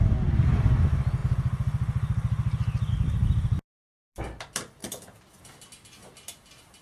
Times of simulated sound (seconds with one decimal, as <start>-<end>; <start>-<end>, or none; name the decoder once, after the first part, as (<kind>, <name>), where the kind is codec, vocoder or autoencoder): none

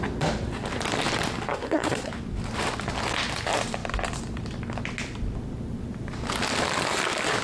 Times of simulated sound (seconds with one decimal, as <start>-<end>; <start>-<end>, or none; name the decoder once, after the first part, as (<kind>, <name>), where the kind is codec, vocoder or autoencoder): 1.5-2.1 (codec, SNAC)